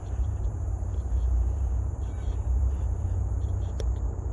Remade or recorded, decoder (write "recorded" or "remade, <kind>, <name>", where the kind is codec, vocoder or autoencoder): remade, vocoder, BigVGAN v2